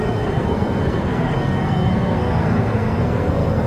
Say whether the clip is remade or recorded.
remade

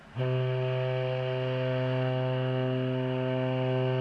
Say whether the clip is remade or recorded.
recorded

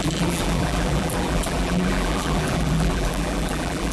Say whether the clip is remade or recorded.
remade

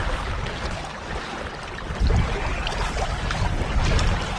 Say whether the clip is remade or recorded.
recorded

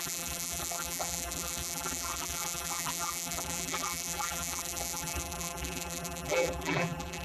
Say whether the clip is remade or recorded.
remade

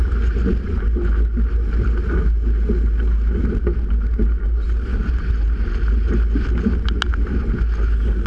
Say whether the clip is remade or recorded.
recorded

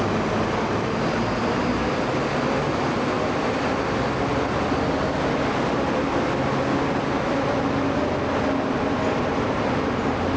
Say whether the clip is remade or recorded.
recorded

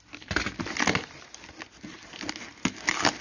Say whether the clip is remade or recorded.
recorded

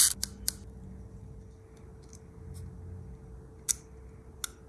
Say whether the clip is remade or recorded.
recorded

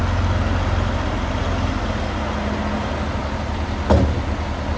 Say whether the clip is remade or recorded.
recorded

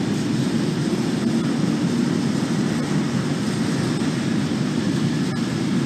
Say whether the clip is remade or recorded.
recorded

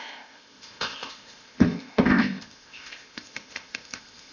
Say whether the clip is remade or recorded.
remade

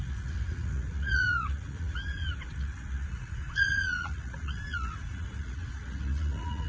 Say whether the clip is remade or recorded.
remade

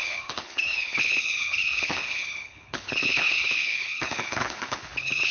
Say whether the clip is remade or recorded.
remade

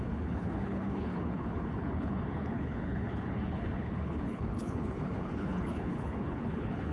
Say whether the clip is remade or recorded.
remade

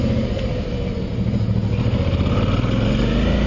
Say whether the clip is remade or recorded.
recorded